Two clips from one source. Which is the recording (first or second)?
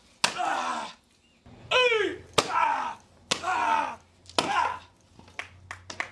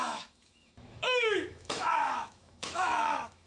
first